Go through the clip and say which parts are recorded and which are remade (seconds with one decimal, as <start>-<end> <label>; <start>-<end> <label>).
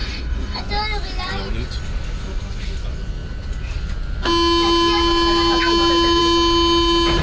0.0-0.6 remade; 0.6-7.2 recorded